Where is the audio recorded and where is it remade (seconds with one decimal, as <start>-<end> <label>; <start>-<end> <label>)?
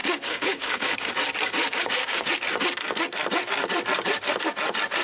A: 0.0-1.1 remade; 1.1-1.6 recorded; 1.6-2.3 remade; 2.3-5.0 recorded